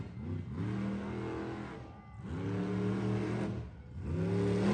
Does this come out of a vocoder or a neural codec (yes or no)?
no